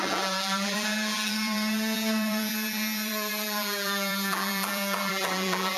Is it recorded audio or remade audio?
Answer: remade